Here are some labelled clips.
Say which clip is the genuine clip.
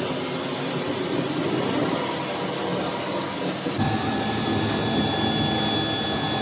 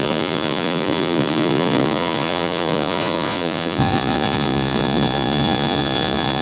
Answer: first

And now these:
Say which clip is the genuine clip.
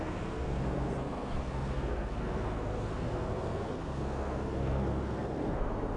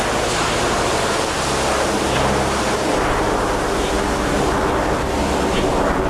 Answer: second